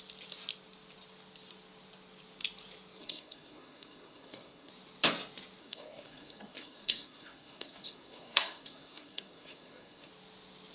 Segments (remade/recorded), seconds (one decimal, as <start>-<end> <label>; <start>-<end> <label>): 0.0-3.0 recorded; 3.0-4.7 remade; 4.7-5.6 recorded; 5.6-10.1 remade; 10.1-10.7 recorded

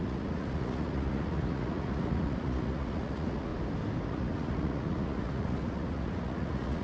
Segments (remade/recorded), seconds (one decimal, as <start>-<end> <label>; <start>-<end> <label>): 0.0-3.5 remade; 3.5-4.1 recorded; 4.1-6.8 remade

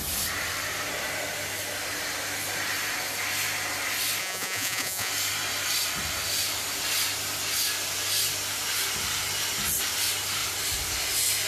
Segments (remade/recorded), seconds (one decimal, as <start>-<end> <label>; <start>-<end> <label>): 0.0-4.2 recorded; 4.2-5.1 remade; 5.1-11.5 recorded

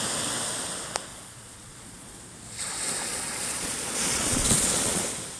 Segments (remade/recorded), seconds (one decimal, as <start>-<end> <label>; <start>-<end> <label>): 0.0-1.1 recorded; 1.1-2.2 remade; 2.2-3.0 recorded; 3.0-5.0 remade; 5.0-5.4 recorded

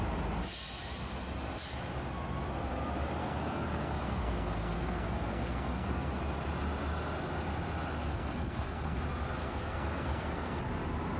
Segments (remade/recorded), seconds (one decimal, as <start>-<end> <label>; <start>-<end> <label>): 0.0-3.2 recorded; 3.2-6.2 remade; 6.2-8.1 recorded; 8.1-9.0 remade; 9.0-9.4 recorded; 9.4-10.6 remade; 10.6-11.2 recorded

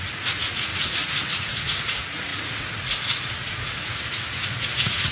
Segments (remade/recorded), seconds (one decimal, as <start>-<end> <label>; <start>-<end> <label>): 0.0-5.1 remade

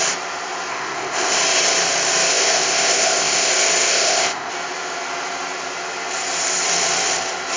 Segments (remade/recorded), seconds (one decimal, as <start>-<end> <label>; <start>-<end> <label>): 0.0-0.7 recorded; 0.7-1.4 remade; 1.4-2.3 recorded; 2.3-3.5 remade; 3.5-3.9 recorded; 3.9-4.5 remade; 4.5-7.6 recorded

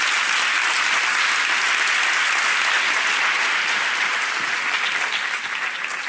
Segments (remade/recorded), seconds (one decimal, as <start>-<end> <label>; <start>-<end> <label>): 0.0-6.1 recorded